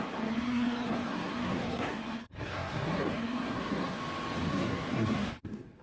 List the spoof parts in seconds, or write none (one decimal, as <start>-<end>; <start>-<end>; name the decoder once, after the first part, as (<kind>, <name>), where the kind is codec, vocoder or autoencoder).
0.0-4.0 (codec, SNAC); 4.5-5.8